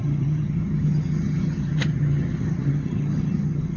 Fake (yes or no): yes